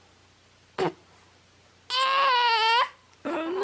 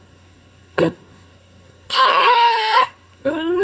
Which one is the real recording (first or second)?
first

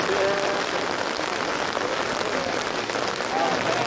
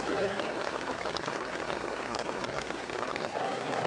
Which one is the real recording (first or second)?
first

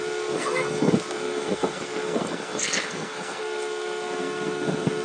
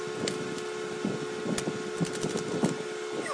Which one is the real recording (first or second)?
second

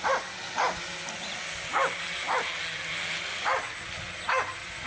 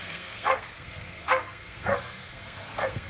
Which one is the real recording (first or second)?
first